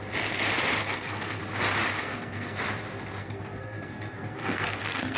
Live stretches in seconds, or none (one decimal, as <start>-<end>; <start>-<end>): 0.0-0.8; 1.4-2.0; 2.6-3.2